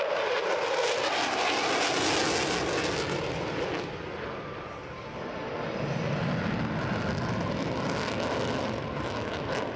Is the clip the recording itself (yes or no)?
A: yes